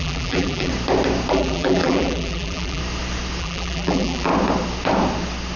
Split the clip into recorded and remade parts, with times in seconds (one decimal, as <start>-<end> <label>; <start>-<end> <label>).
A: 0.0-0.7 remade; 0.7-1.3 recorded; 1.3-2.8 remade; 2.8-3.4 recorded; 3.4-4.3 remade; 4.3-5.6 recorded